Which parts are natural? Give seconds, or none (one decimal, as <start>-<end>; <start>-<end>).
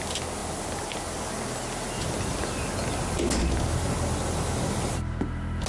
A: 0.0-5.7